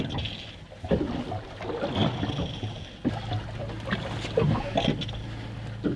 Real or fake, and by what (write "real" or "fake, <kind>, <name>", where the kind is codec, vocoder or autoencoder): real